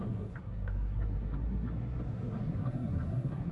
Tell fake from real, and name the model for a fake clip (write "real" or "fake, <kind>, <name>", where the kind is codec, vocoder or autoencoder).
fake, codec, SNAC